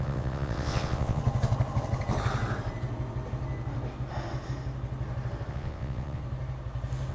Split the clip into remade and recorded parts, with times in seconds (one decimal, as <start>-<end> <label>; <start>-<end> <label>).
0.0-1.2 remade; 1.2-5.5 recorded; 5.5-6.2 remade; 6.2-7.1 recorded